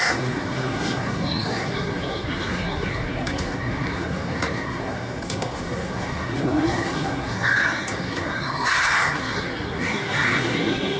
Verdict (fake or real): fake